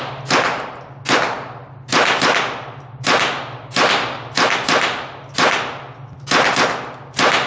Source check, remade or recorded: recorded